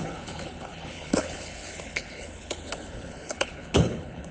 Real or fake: fake